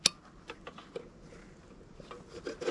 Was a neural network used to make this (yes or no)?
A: no